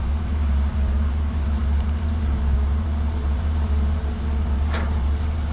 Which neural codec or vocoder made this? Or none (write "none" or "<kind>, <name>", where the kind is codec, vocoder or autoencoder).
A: vocoder, BigVGAN v2